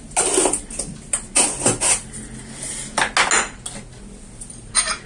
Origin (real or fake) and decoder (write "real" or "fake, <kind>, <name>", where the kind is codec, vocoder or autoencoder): real